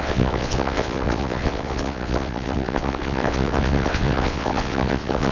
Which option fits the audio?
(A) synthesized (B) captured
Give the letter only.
A